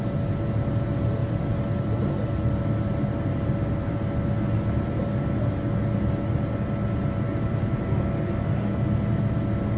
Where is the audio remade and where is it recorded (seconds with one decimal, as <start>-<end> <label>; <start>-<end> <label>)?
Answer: 0.0-1.2 recorded; 1.2-2.1 remade; 2.1-7.3 recorded; 7.3-7.8 remade; 7.8-9.8 recorded

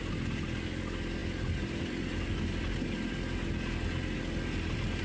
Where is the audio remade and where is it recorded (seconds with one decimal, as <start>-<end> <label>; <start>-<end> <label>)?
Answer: 0.0-5.0 recorded

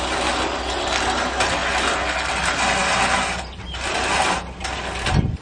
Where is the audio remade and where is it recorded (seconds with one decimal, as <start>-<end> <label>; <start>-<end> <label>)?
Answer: 0.0-5.4 recorded